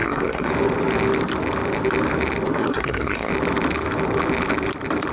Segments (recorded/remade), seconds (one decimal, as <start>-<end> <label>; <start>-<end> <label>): 0.0-0.5 remade; 0.5-2.5 recorded; 2.5-3.3 remade; 3.3-5.1 recorded